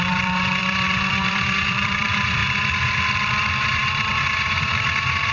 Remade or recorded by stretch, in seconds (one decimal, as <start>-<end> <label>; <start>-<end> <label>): 0.0-2.4 remade; 2.4-3.5 recorded; 3.5-5.3 remade